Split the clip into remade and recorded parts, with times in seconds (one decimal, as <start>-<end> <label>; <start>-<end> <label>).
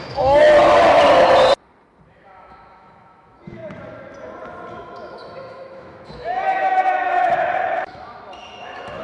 0.0-0.4 remade; 0.4-2.1 recorded; 2.1-3.6 remade; 3.6-4.7 recorded; 4.7-9.0 remade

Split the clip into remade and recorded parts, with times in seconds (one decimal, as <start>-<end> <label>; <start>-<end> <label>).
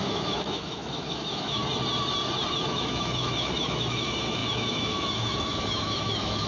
0.0-1.6 remade; 1.6-2.5 recorded; 2.5-6.5 remade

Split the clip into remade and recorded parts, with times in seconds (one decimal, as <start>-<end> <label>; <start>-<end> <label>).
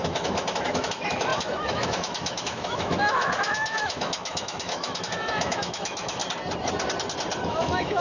0.0-6.2 remade; 6.2-7.4 recorded; 7.4-8.0 remade